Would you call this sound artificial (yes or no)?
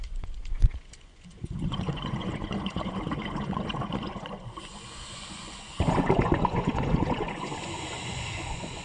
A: yes